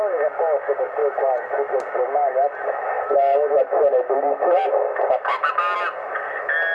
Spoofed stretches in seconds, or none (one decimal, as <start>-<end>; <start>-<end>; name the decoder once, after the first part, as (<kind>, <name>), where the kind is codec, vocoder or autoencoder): none